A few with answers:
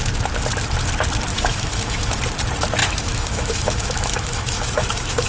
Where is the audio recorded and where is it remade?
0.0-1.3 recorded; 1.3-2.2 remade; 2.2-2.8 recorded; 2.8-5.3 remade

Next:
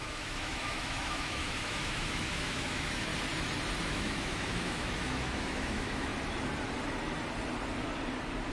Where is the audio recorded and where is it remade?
0.0-3.1 remade; 3.1-3.8 recorded; 3.8-6.1 remade; 6.1-8.5 recorded

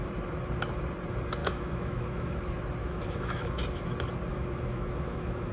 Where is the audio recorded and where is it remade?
0.0-1.4 recorded; 1.4-2.4 remade; 2.4-2.8 recorded; 2.8-3.6 remade; 3.6-4.3 recorded; 4.3-5.5 remade

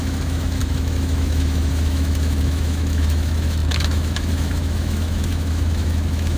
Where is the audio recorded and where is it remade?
0.0-6.4 remade

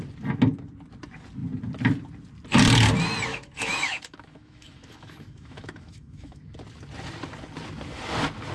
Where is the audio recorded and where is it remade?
0.0-3.3 recorded; 3.3-6.4 remade; 6.4-8.5 recorded

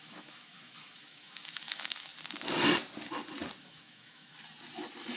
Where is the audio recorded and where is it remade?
0.0-2.1 remade; 2.1-3.6 recorded; 3.6-4.3 remade; 4.3-5.2 recorded

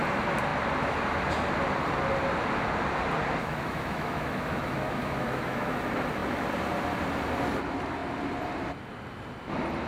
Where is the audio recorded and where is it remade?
0.0-3.4 recorded; 3.4-5.8 remade; 5.8-9.9 recorded

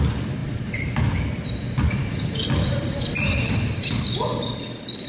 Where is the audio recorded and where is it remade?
0.0-5.1 recorded